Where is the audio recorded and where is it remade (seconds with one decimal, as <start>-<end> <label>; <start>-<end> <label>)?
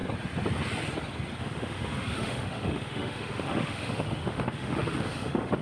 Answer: 0.0-1.4 recorded; 1.4-5.6 remade